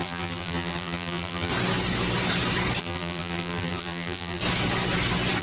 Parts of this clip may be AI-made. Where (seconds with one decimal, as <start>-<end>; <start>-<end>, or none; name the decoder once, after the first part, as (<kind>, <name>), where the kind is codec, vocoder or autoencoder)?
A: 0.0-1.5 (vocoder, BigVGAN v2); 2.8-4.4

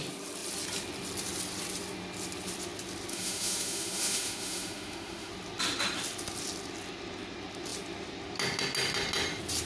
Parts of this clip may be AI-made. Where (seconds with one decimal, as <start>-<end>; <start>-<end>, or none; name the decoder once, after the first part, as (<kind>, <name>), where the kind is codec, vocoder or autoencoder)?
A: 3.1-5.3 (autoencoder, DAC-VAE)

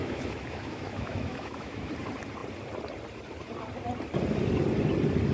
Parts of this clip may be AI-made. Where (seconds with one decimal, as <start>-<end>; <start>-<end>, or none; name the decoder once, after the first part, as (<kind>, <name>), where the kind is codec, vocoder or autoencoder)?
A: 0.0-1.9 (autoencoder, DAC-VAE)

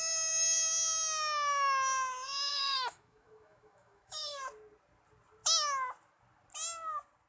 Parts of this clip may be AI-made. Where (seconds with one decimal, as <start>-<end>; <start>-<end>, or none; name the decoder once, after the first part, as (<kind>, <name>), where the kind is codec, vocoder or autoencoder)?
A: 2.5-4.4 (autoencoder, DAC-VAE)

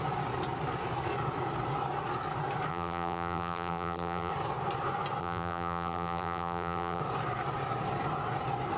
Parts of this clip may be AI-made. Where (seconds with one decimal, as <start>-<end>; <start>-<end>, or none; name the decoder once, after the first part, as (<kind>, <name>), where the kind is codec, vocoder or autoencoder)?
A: 2.7-4.3 (vocoder, BigVGAN v2); 5.2-7.0

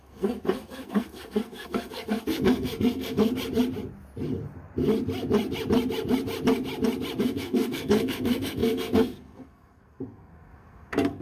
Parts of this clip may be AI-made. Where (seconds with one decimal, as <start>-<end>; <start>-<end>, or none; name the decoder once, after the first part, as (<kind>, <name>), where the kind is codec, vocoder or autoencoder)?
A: 0.0-3.3 (codec, SNAC); 7.2-11.2

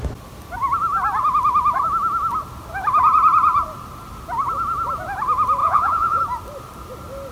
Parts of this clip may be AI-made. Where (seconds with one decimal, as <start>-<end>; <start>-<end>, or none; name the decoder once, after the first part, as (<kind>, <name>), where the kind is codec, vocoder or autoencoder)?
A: 5.6-6.2 (vocoder, Vocos)